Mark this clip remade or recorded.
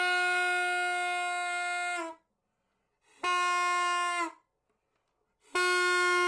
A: recorded